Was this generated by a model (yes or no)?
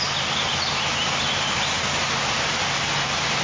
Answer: no